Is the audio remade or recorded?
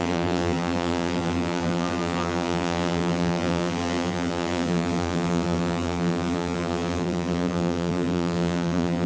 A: remade